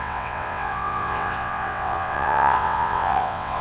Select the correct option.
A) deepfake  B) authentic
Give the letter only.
A